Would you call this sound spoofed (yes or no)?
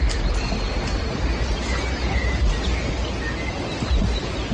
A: no